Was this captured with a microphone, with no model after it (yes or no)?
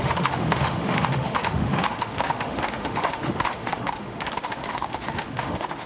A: no